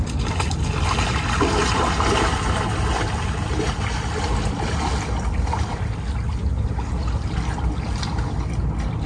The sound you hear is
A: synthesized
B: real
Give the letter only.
B